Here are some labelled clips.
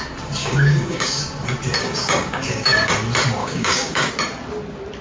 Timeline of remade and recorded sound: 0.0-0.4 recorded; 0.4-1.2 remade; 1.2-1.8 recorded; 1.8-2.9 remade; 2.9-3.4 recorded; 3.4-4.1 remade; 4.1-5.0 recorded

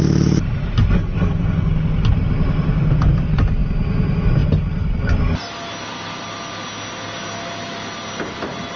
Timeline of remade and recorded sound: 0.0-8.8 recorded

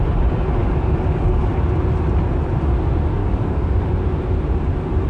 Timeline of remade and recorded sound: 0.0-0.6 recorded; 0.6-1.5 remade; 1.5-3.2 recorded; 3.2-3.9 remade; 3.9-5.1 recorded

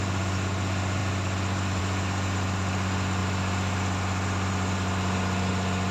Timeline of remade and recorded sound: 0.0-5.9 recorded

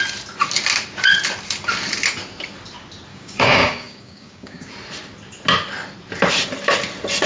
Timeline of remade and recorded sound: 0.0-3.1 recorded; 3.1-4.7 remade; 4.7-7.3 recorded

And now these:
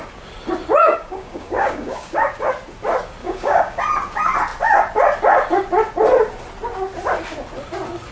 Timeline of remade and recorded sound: 0.0-0.8 recorded; 0.8-2.3 remade; 2.3-3.2 recorded; 3.2-3.8 remade; 3.8-8.1 recorded

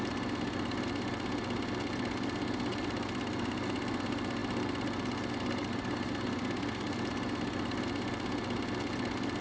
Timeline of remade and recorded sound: 0.0-9.4 recorded